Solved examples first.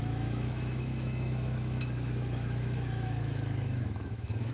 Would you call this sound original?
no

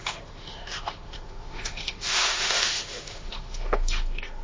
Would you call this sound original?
no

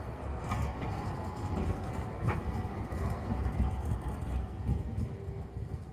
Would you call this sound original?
no